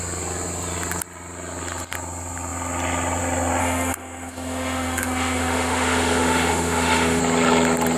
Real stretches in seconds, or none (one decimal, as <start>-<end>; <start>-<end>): 0.0-3.6; 7.2-8.0